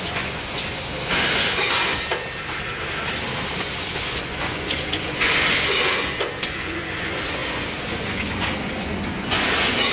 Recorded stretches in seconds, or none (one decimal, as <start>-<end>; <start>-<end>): 2.1-3.5